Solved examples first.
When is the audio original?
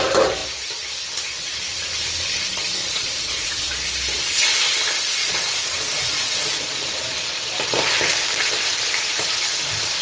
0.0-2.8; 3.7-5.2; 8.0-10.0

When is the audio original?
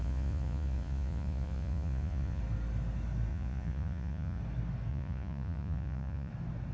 2.4-3.3; 4.4-4.9; 6.3-6.7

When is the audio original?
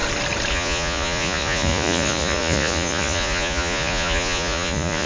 0.0-0.5